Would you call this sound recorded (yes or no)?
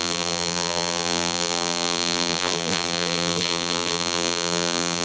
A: no